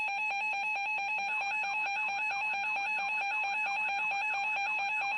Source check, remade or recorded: remade